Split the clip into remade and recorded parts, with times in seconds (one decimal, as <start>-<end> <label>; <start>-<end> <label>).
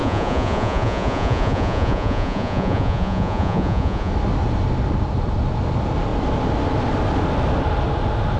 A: 0.0-4.1 remade; 4.1-8.4 recorded